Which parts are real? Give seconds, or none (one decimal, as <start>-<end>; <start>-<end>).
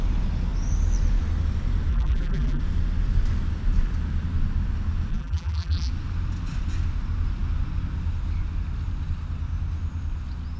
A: 0.0-1.9; 2.6-5.1; 5.9-10.6